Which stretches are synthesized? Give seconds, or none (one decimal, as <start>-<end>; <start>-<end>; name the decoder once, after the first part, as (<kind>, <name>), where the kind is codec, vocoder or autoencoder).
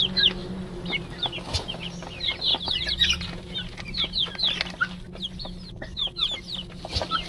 none